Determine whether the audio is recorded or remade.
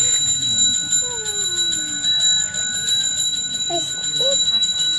recorded